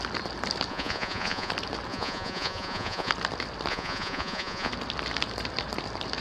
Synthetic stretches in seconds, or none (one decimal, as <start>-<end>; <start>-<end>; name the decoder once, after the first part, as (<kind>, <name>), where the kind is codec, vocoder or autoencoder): 0.7-1.5 (vocoder, Vocos); 1.9-3.1; 3.7-4.7